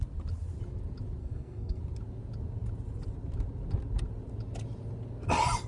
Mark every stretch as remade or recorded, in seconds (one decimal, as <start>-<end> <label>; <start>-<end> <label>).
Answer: 0.0-1.2 recorded; 1.2-1.8 remade; 1.8-5.7 recorded